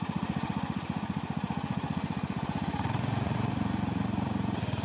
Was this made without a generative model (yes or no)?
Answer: no